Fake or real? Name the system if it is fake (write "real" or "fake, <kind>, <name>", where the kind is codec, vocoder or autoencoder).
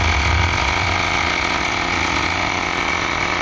real